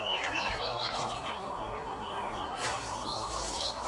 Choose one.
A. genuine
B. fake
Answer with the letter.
B